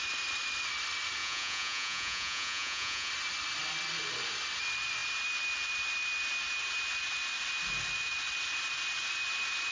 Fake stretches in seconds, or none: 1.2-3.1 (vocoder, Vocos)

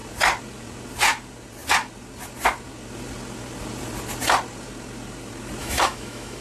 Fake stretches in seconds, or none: 5.6-6.4 (autoencoder, DAC-VAE)